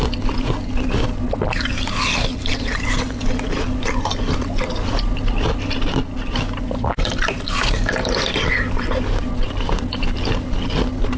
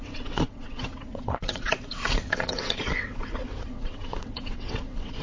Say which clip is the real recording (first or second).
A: first